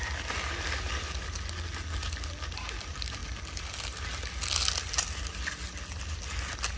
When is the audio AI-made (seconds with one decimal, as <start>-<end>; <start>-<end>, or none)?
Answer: none